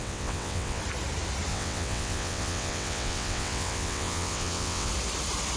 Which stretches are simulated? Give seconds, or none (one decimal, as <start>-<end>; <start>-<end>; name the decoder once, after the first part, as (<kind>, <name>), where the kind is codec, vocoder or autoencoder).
0.0-0.8 (vocoder, WaveNeXt); 1.5-4.9